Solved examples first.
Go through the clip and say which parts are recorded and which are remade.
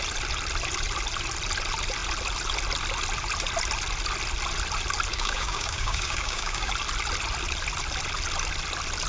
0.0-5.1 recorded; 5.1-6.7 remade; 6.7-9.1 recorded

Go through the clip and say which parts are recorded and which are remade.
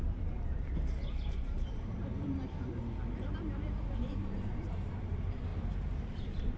0.0-2.1 remade; 2.1-3.9 recorded; 3.9-5.5 remade; 5.5-6.1 recorded; 6.1-6.6 remade